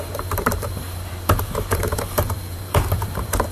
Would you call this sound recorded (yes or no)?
no